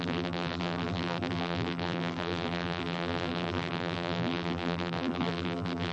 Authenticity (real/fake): fake